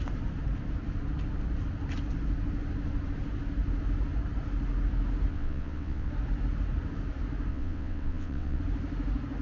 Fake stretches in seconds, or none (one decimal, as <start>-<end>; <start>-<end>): 5.3-6.1; 7.5-8.6